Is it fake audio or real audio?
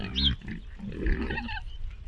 real